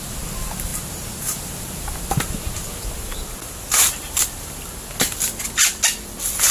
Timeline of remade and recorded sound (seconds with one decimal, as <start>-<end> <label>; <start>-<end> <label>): 0.0-6.5 recorded